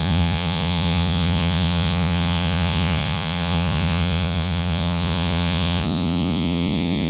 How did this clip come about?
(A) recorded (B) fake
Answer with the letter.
B